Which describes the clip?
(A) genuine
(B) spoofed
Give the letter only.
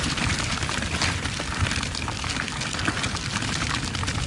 A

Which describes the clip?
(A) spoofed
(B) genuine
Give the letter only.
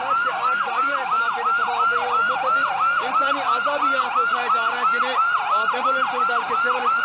B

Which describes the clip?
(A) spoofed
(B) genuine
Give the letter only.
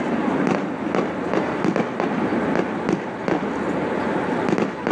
B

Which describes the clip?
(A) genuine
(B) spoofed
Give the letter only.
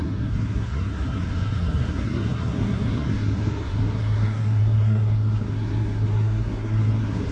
B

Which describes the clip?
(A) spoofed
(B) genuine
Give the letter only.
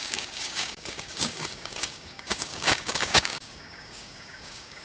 A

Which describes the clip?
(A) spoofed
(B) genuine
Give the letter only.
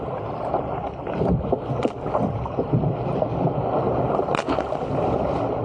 B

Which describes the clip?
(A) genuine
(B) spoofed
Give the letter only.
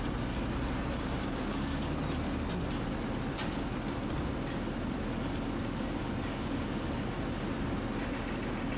A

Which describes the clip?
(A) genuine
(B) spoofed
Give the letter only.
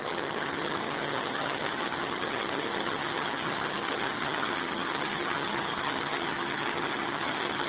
B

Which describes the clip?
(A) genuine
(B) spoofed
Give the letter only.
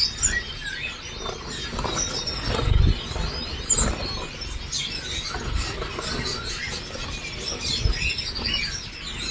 A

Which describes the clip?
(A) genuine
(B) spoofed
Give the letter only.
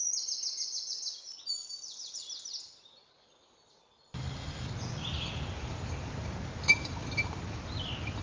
A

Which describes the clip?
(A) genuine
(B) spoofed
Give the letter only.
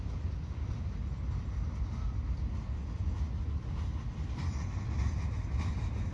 A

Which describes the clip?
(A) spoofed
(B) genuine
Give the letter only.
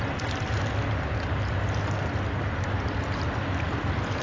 B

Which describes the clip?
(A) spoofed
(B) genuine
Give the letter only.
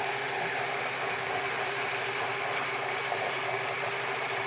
A